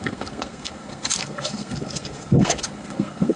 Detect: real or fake fake